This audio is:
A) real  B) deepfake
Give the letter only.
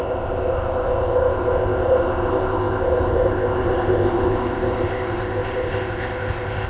B